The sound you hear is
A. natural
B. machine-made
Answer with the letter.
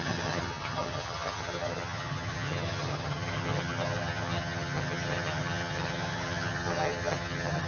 B